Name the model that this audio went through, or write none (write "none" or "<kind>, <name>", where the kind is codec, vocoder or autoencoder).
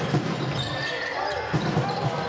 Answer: none